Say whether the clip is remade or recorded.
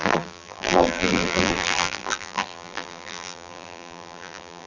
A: remade